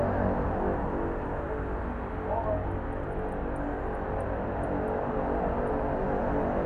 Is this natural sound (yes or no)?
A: yes